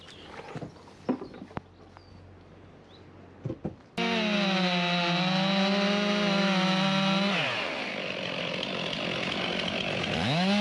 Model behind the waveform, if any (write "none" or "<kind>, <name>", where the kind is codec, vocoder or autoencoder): none